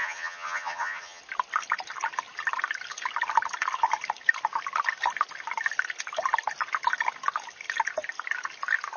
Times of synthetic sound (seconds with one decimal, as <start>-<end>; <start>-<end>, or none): 0.0-1.2